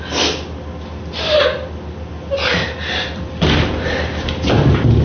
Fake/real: real